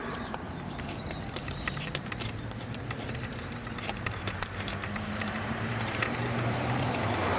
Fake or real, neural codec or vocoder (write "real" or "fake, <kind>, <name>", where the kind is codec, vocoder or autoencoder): fake, vocoder, BigVGAN v2